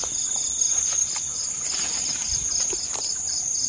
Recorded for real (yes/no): yes